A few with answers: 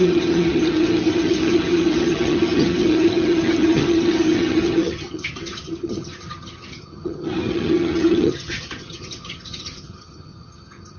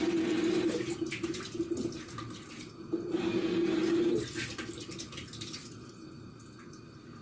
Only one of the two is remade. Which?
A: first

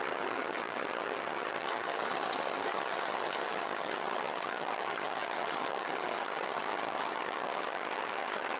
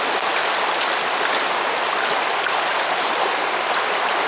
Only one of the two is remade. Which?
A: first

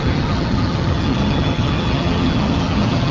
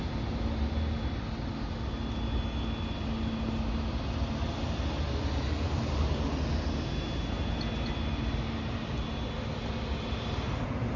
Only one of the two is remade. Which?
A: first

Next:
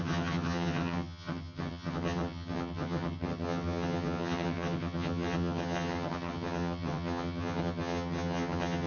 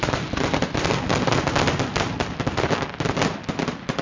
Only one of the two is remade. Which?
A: first